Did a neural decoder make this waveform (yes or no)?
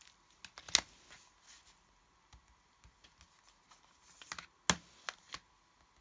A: no